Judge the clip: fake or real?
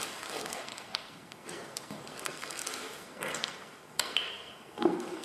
fake